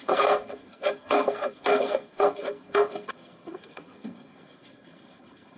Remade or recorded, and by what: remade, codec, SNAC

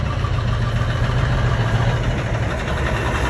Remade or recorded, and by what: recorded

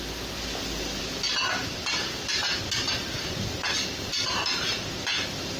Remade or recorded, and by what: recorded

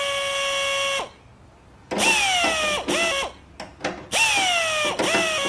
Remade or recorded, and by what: recorded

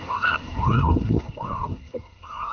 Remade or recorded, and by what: remade, codec, SNAC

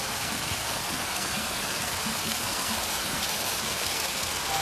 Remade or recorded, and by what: remade, codec, SNAC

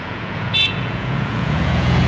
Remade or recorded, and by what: remade, vocoder, Vocos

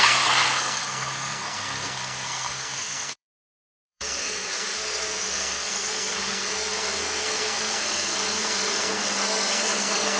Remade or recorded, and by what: remade, codec, SNAC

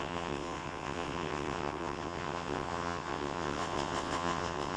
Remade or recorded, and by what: remade, vocoder, WaveNeXt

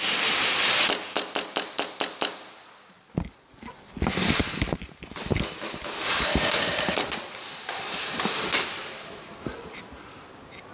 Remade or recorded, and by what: recorded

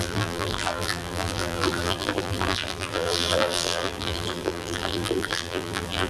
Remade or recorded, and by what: remade, vocoder, BigVGAN v2